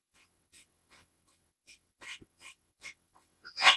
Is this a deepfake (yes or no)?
yes